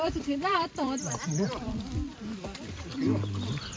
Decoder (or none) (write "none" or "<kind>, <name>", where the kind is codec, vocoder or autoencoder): vocoder, BigVGAN v2